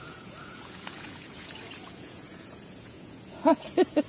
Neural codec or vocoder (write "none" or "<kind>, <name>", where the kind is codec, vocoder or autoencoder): vocoder, Vocos